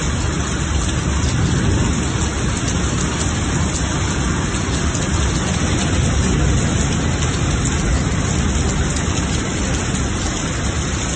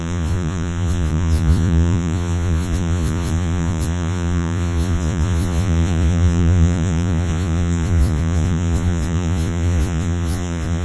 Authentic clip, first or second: first